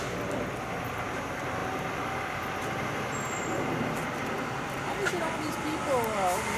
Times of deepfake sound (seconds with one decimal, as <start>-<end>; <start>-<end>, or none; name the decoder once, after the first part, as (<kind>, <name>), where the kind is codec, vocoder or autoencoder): none